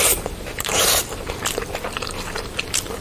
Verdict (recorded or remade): remade